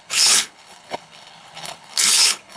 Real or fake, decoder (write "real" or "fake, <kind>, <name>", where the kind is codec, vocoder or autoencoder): fake, codec, HILCodec